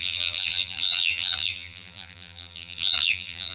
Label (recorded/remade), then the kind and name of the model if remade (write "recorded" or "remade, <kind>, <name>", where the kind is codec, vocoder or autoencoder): remade, vocoder, BigVGAN v2